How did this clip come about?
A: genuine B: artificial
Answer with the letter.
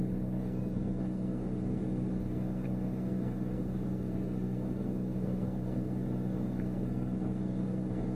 B